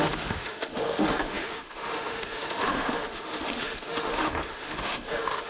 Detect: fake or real fake